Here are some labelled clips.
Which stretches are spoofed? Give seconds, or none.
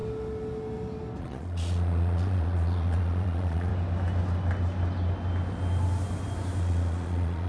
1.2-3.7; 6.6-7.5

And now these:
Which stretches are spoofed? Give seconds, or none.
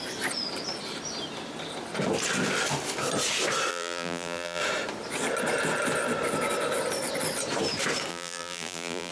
3.7-4.6; 8.1-9.1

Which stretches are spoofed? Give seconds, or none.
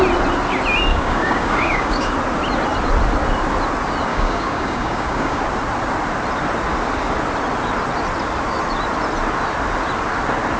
0.9-2.1; 4.1-5.4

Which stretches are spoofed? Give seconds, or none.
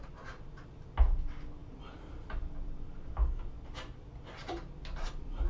none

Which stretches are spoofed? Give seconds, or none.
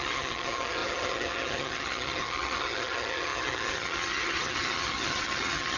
0.0-5.8